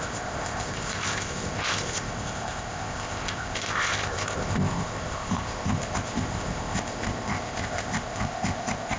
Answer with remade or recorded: remade